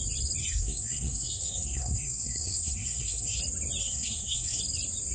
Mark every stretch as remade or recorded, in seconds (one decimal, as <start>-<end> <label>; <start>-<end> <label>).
0.0-0.4 recorded; 0.4-3.4 remade; 3.4-3.8 recorded; 3.8-4.6 remade; 4.6-5.1 recorded